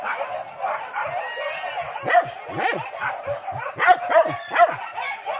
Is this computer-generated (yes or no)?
no